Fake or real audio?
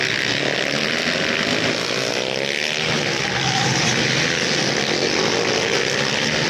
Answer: real